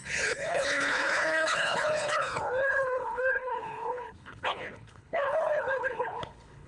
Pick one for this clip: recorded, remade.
remade